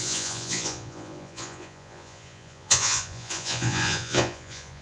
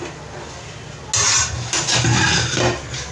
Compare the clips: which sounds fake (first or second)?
first